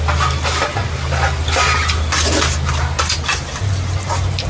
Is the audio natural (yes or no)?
yes